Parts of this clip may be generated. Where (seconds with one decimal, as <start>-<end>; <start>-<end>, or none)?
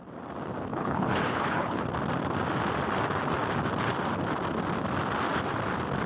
0.7-1.8